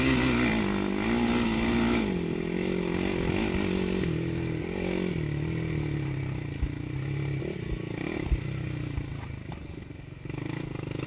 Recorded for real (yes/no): yes